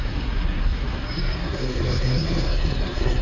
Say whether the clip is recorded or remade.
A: remade